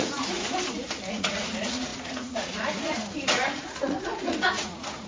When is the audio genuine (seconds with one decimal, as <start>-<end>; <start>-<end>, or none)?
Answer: 0.4-1.1